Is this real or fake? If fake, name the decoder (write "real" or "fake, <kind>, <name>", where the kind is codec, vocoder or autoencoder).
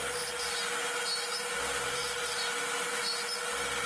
real